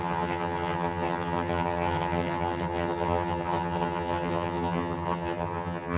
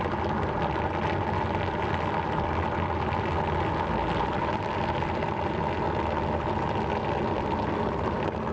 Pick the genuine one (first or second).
second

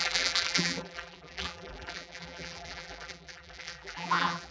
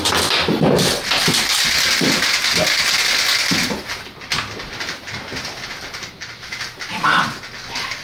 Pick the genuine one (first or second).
second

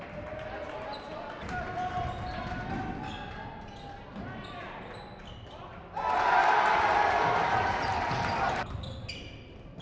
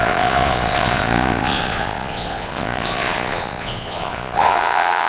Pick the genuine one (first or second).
first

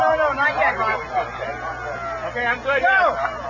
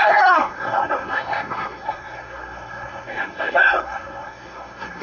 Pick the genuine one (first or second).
first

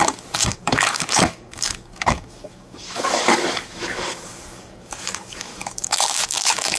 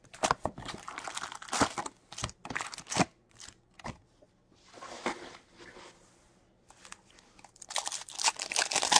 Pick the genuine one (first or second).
second